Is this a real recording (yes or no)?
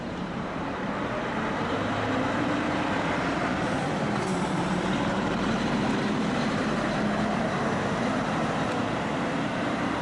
no